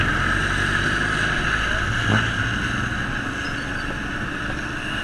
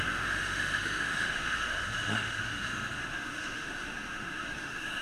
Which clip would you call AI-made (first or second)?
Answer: second